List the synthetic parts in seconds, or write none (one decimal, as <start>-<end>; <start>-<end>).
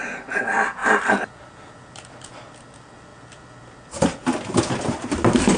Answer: 0.8-1.3